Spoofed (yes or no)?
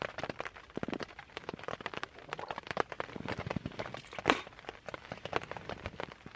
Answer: yes